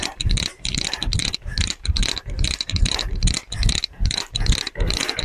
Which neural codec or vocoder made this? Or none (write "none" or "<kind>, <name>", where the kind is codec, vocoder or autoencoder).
vocoder, BigVGAN v2